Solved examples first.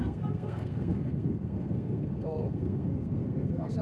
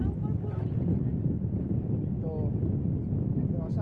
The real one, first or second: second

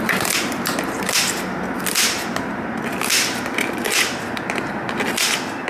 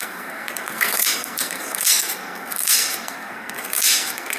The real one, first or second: first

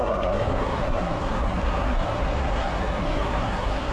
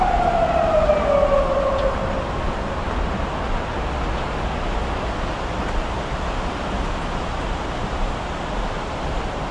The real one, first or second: second